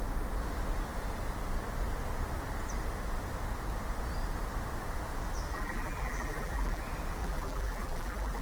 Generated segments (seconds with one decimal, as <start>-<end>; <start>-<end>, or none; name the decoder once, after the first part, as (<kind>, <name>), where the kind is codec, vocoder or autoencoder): 5.5-6.8 (vocoder, BigVGAN v2); 7.2-8.4

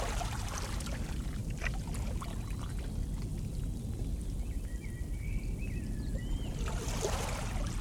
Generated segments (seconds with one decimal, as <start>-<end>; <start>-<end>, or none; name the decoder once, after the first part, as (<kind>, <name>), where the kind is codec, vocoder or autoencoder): none

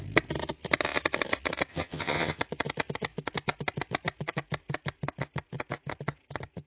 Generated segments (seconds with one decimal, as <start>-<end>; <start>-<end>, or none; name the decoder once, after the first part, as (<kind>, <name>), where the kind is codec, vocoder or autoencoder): 1.7-2.4 (vocoder, HiFi-GAN)

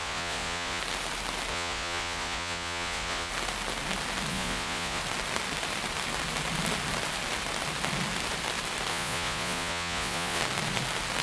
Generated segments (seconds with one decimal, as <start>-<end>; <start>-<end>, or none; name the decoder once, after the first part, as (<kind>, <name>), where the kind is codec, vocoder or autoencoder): 0.0-0.8 (vocoder, Vocos); 1.5-3.3; 4.3-5.0; 8.9-10.4

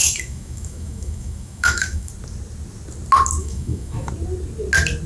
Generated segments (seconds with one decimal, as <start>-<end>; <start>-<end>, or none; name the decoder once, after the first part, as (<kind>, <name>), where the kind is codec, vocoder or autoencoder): 0.0-2.1 (autoencoder, DAC-VAE); 3.4-4.1

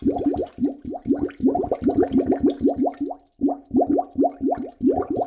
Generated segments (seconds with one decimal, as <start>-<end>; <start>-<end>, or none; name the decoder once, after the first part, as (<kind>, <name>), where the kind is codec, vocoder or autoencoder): 0.4-2.3 (vocoder, BigVGAN v2)

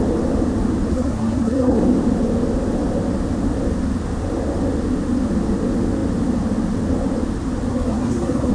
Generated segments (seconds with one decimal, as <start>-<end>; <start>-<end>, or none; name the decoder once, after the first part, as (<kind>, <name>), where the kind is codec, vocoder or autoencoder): 0.9-1.8 (codec, SNAC); 7.7-8.5